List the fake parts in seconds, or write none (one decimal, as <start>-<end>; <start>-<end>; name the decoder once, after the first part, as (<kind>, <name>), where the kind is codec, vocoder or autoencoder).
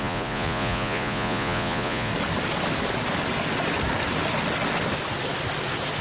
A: 0.0-2.1 (vocoder, Vocos)